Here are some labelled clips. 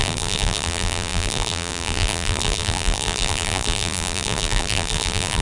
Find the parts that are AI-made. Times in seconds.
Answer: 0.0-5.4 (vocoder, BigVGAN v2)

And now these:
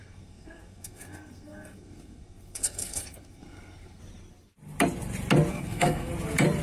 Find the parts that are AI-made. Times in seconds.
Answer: 0.0-4.0 (codec, SNAC); 5.5-6.1

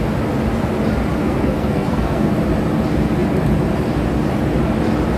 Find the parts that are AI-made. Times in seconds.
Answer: 1.2-2.3 (codec, SNAC)

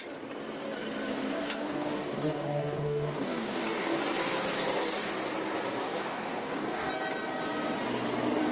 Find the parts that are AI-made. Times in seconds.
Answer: 1.1-4.0 (codec, DAC); 5.8-6.9